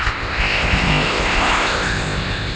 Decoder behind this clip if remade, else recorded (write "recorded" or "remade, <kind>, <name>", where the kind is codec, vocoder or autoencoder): remade, codec, ZipCodec